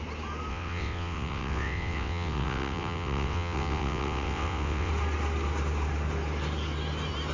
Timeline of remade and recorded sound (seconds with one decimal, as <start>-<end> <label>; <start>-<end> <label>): 0.0-0.5 recorded; 0.5-4.9 remade; 4.9-7.3 recorded